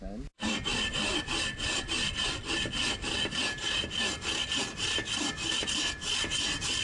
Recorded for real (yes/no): yes